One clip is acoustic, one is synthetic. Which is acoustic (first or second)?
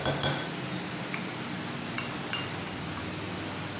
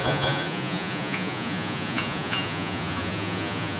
first